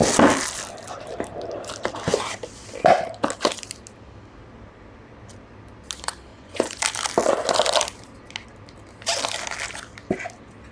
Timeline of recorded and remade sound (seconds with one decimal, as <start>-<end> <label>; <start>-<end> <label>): 0.0-6.3 recorded; 6.3-6.8 remade; 6.8-10.7 recorded